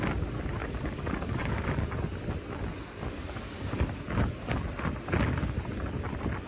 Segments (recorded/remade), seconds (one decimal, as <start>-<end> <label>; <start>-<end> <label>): 0.0-0.6 recorded; 0.6-1.9 remade; 1.9-3.0 recorded; 3.0-3.8 remade; 3.8-6.5 recorded